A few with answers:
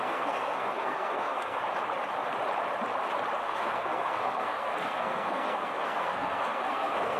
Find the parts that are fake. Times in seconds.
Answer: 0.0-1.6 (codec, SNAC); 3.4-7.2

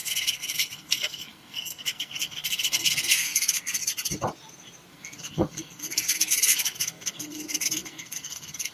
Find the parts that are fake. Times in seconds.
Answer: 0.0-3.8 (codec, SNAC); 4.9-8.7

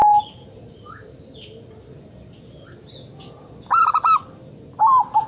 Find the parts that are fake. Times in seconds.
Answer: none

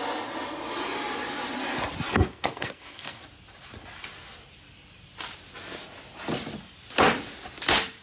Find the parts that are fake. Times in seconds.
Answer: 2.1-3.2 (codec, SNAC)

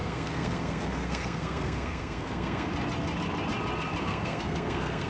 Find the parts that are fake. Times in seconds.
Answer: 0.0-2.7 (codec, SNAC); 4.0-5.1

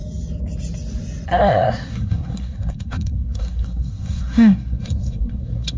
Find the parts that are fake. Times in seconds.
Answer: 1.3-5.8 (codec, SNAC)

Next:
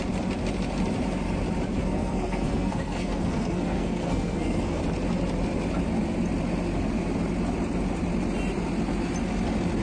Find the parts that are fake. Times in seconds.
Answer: 1.8-4.8 (codec, SNAC)

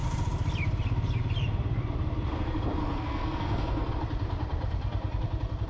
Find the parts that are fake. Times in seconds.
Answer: 2.8-3.9 (codec, SNAC)